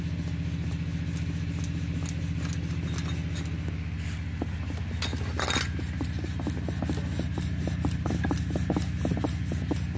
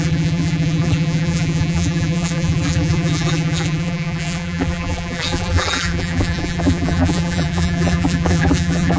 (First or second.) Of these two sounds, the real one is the first